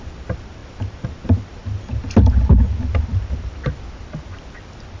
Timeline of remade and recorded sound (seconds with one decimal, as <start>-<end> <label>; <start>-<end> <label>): 0.0-5.0 recorded